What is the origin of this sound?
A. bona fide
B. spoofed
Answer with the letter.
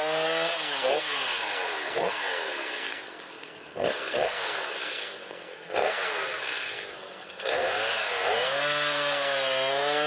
B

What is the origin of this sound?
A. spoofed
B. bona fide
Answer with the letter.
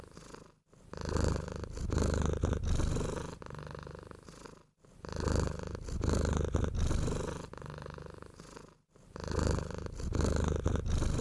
B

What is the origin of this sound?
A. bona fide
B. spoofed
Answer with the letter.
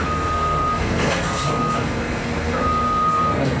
B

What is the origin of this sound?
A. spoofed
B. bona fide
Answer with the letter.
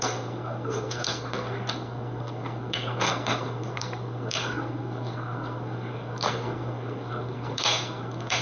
A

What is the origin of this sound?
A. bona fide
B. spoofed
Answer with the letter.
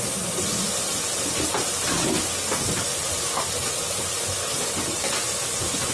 A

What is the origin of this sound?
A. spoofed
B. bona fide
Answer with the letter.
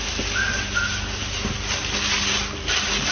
B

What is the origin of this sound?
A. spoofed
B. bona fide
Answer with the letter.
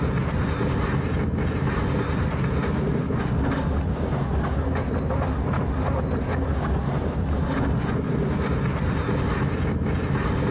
B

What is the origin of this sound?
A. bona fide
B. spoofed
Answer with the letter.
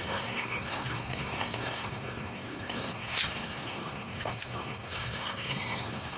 B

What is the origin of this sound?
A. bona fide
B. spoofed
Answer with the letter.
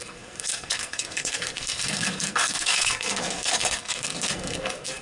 B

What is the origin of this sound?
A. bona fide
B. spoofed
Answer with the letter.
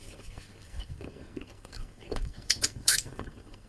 B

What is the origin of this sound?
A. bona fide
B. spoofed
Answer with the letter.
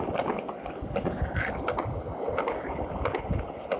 A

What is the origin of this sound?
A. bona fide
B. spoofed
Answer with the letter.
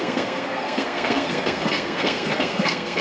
B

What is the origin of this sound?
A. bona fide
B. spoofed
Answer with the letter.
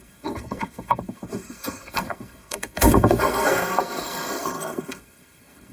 B